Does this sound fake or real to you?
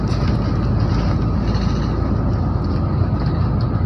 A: real